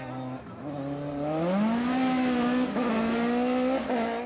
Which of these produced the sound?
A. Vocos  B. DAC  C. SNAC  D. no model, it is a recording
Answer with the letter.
D